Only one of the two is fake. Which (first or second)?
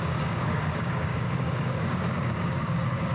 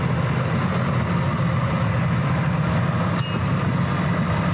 first